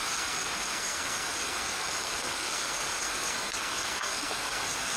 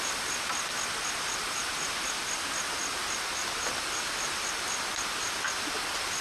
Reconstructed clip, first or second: first